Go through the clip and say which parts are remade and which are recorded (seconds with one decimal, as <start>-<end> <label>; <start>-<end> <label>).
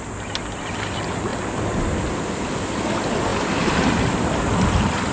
0.0-5.1 recorded